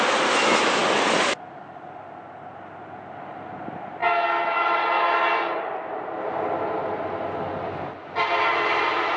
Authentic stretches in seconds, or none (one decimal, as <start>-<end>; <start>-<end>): 0.0-9.2